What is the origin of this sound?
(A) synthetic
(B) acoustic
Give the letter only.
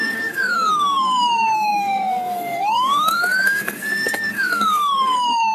A